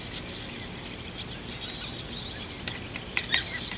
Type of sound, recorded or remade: recorded